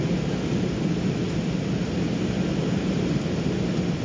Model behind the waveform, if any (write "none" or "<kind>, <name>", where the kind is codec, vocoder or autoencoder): none